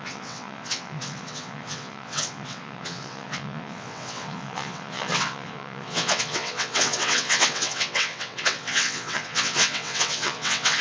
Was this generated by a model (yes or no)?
yes